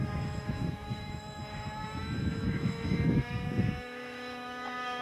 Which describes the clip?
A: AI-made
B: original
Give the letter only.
A